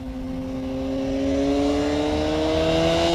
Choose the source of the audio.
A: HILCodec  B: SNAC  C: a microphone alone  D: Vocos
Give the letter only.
C